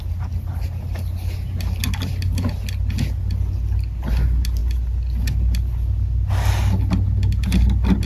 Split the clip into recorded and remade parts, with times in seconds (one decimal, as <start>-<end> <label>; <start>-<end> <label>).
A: 0.0-8.1 recorded